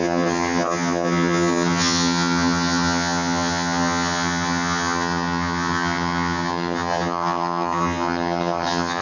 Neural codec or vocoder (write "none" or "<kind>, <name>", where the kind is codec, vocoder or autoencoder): vocoder, HiFi-GAN